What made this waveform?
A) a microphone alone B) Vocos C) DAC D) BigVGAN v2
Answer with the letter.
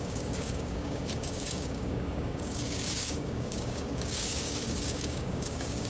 C